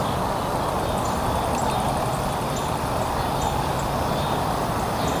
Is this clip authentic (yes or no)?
yes